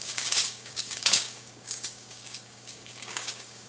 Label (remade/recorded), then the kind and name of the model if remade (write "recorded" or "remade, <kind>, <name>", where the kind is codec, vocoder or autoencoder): remade, codec, DAC